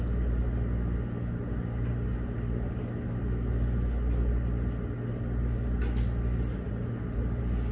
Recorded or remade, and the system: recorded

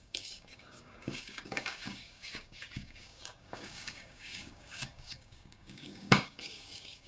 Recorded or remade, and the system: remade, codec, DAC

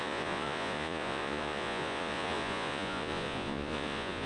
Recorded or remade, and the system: remade, vocoder, Vocos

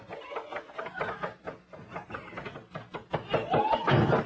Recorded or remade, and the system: recorded